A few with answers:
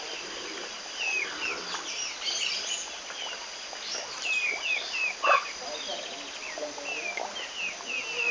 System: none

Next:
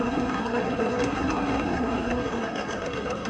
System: codec, SNAC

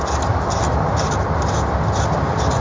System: none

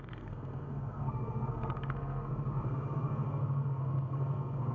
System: codec, SNAC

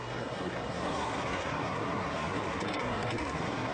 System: codec, SNAC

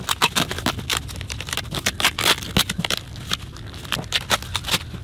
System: none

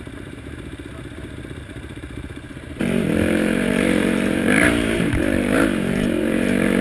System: vocoder, BigVGAN v2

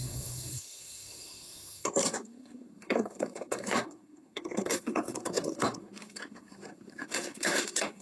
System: codec, SNAC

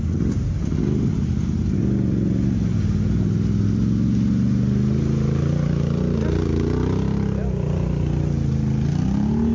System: none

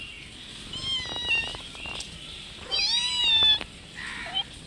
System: none